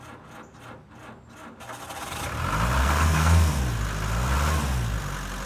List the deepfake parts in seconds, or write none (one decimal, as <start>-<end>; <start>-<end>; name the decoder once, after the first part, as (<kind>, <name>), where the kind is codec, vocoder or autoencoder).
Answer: 2.8-3.6 (codec, SNAC)